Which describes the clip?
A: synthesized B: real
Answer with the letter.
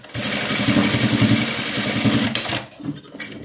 B